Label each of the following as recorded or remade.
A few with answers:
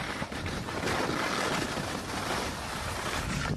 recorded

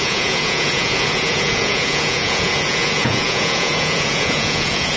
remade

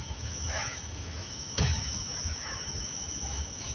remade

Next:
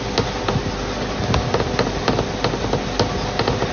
recorded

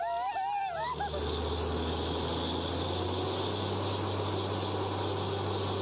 recorded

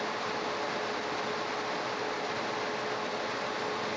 recorded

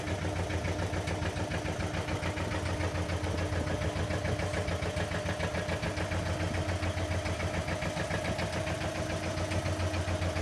recorded